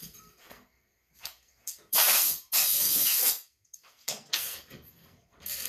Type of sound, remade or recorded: remade